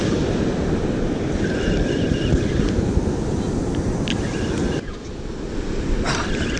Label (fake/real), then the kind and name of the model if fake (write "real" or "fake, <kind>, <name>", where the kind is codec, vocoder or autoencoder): real